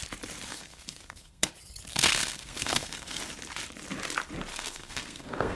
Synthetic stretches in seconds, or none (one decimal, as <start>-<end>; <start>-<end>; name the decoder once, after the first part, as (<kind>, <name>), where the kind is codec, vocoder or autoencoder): 0.5-1.5 (codec, SNAC); 1.9-3.2; 4.5-5.6